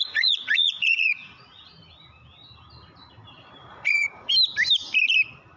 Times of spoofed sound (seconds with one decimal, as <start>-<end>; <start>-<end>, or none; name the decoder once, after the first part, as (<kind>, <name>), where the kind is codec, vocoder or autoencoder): 0.0-1.7 (vocoder, Vocos); 3.7-4.3

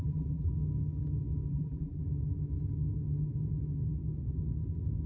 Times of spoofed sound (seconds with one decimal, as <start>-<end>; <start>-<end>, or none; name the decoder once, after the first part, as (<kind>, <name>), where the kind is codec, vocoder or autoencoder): 0.0-0.5 (vocoder, BigVGAN v2); 1.5-2.0